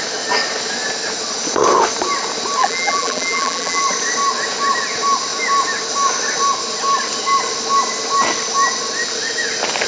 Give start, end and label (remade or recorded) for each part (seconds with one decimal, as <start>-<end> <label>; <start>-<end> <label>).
0.0-2.6 recorded; 2.6-3.8 remade; 3.8-9.9 recorded